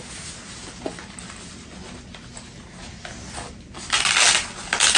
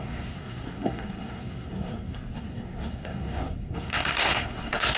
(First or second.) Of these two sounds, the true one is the first